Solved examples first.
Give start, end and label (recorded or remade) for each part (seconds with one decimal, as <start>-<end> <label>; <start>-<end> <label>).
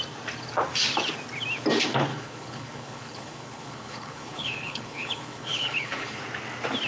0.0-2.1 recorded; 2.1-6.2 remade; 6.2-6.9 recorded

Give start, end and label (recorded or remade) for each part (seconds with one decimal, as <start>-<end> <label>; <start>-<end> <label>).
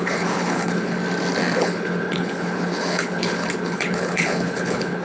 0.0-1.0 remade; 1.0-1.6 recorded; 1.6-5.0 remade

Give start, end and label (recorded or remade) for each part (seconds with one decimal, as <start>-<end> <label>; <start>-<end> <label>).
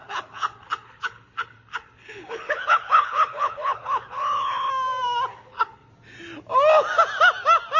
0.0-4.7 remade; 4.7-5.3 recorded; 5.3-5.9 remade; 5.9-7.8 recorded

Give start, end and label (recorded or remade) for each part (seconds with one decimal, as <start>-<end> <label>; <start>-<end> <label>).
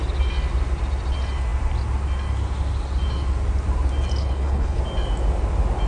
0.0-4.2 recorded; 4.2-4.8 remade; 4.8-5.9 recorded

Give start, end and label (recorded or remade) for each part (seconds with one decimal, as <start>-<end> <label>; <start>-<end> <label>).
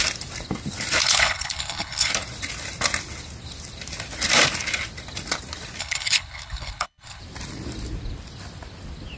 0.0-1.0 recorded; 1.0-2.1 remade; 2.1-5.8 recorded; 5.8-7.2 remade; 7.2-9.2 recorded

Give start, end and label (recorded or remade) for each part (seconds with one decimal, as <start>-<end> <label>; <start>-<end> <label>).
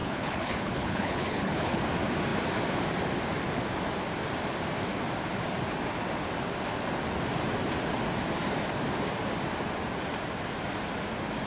0.0-1.8 remade; 1.8-11.5 recorded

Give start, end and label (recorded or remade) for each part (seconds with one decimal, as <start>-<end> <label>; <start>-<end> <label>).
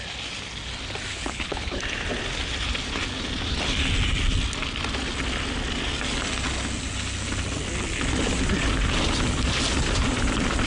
0.0-1.1 recorded; 1.1-1.8 remade; 1.8-10.7 recorded